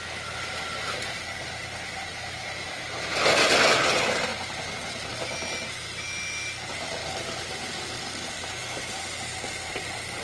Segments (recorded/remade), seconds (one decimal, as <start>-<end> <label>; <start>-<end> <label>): 0.0-10.2 recorded